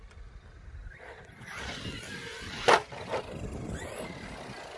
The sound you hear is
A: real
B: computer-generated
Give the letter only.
A